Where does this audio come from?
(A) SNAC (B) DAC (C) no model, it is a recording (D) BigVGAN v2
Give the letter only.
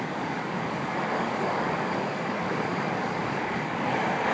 B